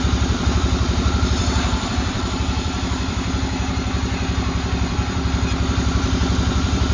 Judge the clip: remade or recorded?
remade